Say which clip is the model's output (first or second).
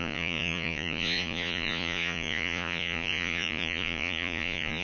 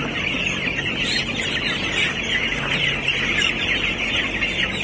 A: first